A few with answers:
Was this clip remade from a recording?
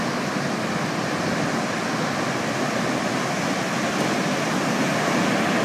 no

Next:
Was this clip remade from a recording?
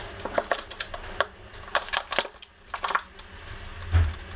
no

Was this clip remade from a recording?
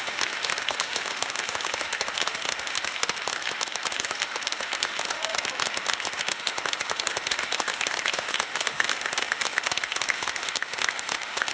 yes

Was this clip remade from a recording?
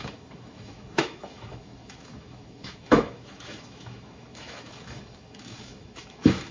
yes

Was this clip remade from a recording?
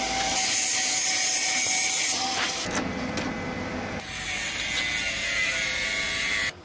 no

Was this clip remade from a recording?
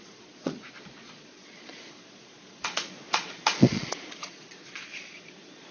yes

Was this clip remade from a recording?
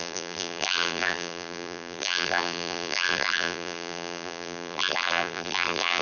yes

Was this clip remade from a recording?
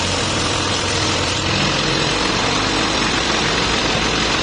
yes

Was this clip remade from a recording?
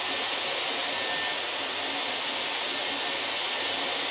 no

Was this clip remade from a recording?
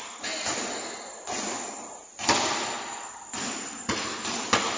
no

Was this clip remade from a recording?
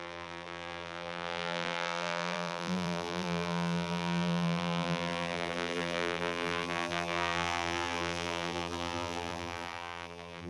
yes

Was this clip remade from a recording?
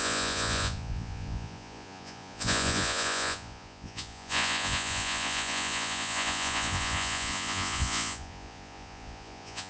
yes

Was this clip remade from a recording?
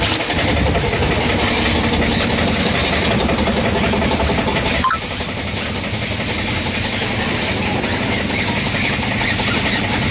no